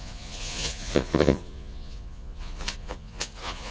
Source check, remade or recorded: remade